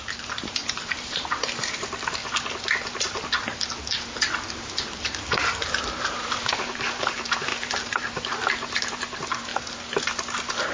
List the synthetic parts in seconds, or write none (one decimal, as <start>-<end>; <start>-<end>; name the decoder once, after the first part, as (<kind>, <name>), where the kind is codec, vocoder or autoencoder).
0.0-2.2 (vocoder, BigVGAN v2); 4.5-9.5